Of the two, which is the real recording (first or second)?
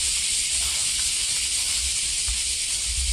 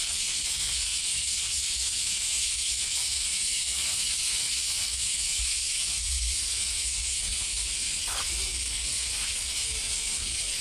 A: first